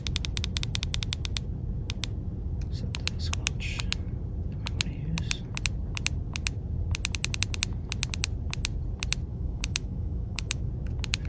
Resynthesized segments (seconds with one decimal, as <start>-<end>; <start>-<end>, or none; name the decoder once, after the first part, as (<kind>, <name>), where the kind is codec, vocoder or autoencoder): 9.3-10.7 (autoencoder, DAC-VAE)